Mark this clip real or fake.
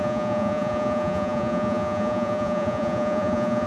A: fake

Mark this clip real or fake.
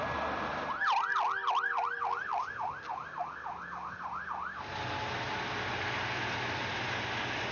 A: real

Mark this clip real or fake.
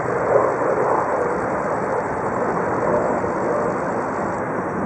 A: real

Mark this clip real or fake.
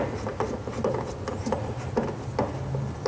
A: real